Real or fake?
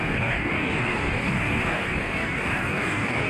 fake